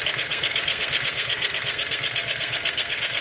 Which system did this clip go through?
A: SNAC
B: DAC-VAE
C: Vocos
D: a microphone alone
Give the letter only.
A